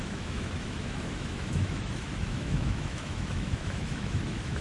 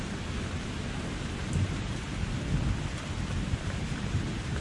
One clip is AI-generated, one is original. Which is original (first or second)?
second